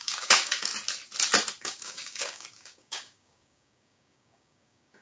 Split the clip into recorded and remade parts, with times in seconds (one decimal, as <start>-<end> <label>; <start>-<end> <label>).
0.0-0.7 remade; 0.7-1.6 recorded; 1.6-5.0 remade